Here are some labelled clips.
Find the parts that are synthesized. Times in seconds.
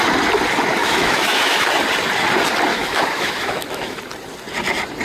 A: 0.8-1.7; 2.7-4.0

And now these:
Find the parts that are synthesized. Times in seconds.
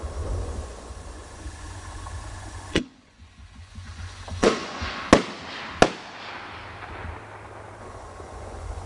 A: 0.0-5.1; 7.8-8.9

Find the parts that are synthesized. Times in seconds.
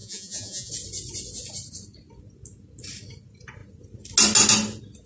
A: 0.0-0.7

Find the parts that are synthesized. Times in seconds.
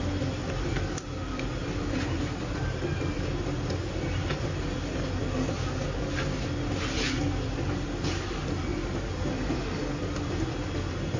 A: none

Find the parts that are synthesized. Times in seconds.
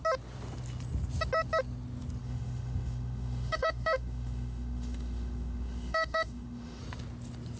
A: 2.2-6.8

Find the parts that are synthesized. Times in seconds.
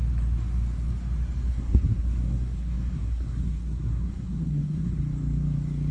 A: 1.5-5.0